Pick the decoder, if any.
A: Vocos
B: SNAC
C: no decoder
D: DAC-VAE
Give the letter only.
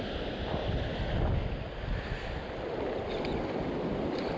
C